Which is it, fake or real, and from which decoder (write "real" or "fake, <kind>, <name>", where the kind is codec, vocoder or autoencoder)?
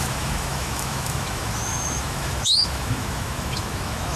fake, autoencoder, DAC-VAE